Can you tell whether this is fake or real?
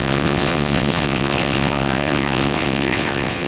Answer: fake